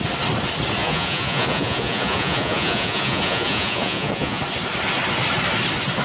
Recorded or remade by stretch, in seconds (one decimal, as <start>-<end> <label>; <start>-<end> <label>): 0.0-0.8 recorded; 0.8-4.4 remade; 4.4-6.0 recorded